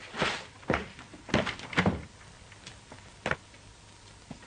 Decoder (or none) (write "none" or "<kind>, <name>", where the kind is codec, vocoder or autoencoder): none